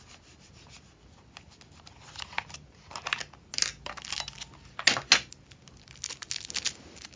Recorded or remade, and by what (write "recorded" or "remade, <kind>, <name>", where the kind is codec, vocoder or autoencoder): recorded